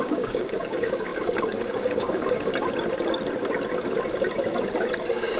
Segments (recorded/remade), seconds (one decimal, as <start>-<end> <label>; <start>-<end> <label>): 0.0-2.5 remade; 2.5-5.0 recorded; 5.0-5.4 remade